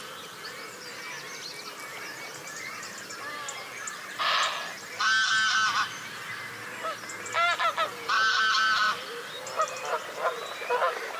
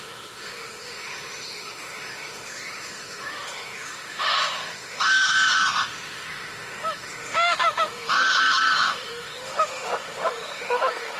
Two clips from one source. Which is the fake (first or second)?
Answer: second